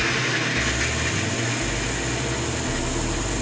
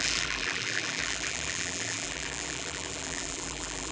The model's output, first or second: second